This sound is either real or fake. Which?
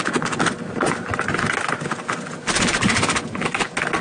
real